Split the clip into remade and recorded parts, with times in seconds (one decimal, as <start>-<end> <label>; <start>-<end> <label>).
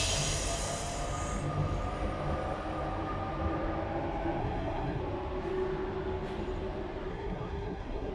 0.0-4.4 recorded; 4.4-5.0 remade; 5.0-7.1 recorded; 7.1-8.1 remade